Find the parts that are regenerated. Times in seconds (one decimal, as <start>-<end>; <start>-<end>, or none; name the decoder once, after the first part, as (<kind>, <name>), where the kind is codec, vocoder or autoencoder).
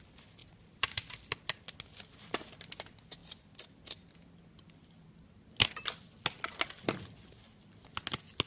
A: none